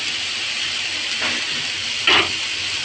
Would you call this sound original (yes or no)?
yes